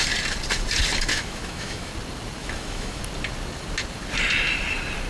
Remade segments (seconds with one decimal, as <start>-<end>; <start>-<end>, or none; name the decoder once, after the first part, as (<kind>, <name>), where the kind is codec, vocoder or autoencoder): 1.1-1.9 (autoencoder, DAC-VAE); 2.4-3.0